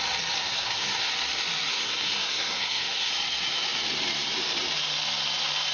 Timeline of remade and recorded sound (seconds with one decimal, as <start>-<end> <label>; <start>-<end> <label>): 0.0-0.4 recorded; 0.4-1.1 remade; 1.1-1.7 recorded; 1.7-3.1 remade; 3.1-5.7 recorded